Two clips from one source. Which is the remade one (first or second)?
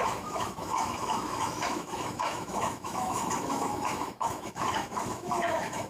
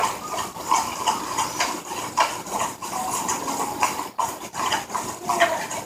first